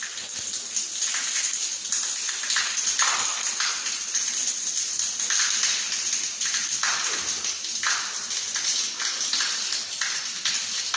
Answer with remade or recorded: recorded